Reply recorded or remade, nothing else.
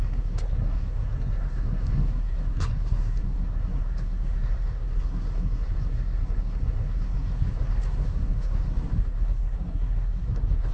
remade